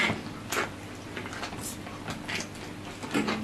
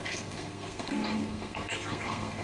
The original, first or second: first